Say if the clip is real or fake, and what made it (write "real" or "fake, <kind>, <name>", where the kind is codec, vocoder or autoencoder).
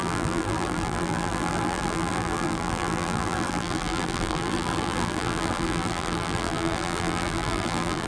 fake, vocoder, BigVGAN v2